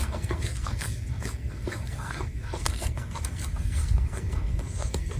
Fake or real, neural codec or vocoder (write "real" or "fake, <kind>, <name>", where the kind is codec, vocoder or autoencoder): fake, codec, SNAC